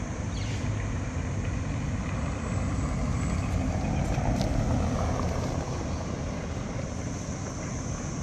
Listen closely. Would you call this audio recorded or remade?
recorded